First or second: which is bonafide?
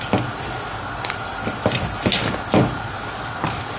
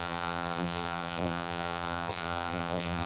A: first